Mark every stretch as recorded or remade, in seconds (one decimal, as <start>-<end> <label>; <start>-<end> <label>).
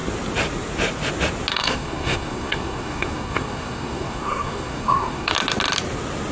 0.0-1.5 recorded; 1.5-5.3 remade; 5.3-6.3 recorded